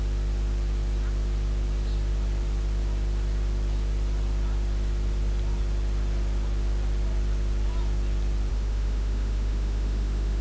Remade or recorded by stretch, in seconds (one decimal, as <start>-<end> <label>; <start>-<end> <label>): 0.0-8.5 recorded; 8.5-10.4 remade